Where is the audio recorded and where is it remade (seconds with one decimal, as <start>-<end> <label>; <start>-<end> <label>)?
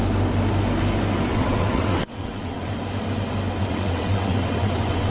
0.0-1.3 recorded; 1.3-2.7 remade; 2.7-3.6 recorded; 3.6-5.1 remade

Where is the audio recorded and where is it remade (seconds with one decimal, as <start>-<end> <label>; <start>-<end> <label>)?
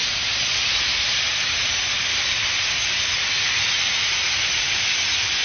0.0-5.4 recorded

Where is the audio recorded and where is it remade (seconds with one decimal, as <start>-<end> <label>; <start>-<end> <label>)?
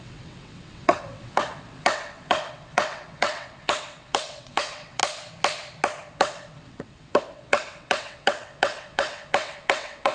0.0-5.0 remade; 5.0-6.1 recorded; 6.1-10.1 remade